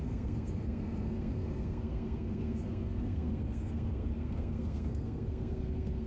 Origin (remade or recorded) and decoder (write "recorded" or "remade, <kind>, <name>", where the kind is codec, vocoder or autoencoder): remade, codec, SNAC